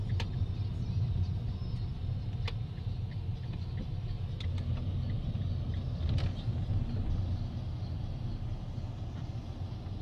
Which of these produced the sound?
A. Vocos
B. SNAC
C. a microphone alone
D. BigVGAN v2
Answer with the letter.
C